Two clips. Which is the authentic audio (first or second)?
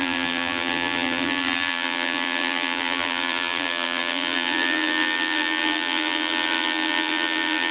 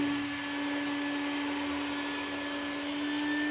second